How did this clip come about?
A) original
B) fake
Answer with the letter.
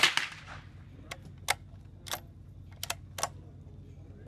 A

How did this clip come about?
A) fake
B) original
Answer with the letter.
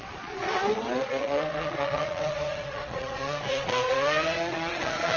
A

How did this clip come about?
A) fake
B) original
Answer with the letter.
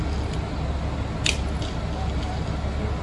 B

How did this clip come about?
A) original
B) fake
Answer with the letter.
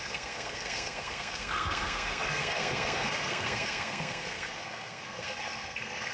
B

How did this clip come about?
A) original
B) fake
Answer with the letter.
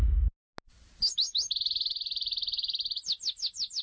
A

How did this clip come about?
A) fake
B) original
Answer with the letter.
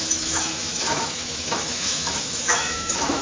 A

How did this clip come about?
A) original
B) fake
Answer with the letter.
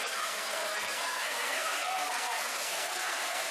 B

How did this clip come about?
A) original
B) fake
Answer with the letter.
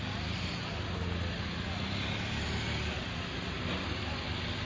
A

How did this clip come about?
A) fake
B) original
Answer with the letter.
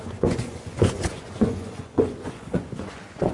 A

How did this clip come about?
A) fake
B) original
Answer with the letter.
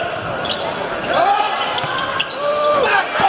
A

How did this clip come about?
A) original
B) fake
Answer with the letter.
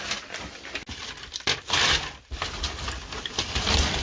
A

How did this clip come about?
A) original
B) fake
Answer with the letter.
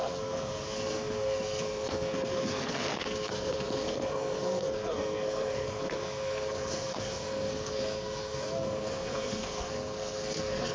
B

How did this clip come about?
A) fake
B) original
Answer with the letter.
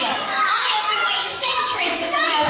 A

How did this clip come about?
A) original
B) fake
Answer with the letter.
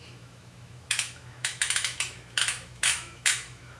B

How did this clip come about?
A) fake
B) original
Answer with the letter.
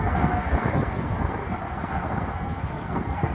A